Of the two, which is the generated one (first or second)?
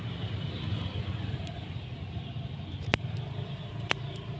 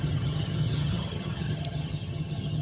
second